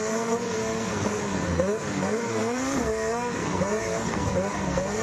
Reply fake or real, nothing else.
fake